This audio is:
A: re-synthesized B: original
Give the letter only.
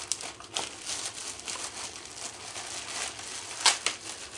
B